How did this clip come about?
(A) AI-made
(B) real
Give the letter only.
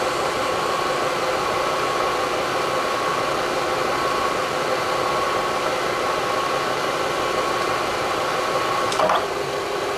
B